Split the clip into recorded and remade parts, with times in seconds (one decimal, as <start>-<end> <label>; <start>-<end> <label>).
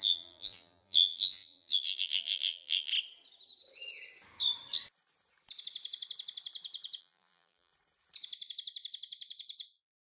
0.0-2.9 remade; 2.9-7.0 recorded; 7.0-7.7 remade; 7.7-10.1 recorded